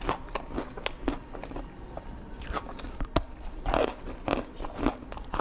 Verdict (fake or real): real